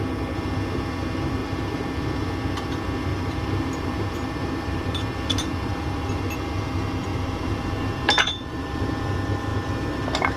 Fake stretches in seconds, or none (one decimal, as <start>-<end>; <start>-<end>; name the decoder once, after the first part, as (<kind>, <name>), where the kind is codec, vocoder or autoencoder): 1.4-2.0 (vocoder, BigVGAN v2); 3.1-5.0; 7.1-8.9

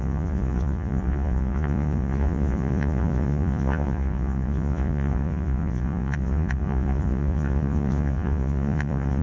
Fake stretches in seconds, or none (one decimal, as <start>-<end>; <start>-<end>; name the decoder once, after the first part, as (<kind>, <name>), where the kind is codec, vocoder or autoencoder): 0.0-9.2 (vocoder, Vocos)

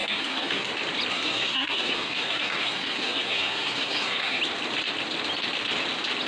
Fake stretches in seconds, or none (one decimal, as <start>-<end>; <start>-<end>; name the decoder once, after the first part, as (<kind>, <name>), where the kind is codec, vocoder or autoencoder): 0.0-0.7 (codec, SNAC); 1.1-4.4

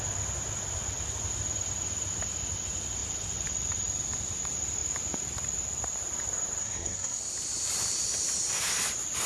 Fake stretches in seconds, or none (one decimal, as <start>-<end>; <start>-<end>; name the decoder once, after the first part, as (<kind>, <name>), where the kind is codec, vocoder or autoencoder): 6.6-7.2 (codec, SNAC)

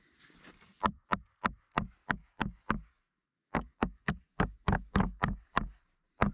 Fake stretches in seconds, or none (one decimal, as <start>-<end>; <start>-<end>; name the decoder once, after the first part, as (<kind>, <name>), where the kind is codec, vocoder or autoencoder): 2.0-5.8 (codec, DAC)